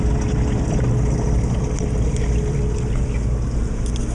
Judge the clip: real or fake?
real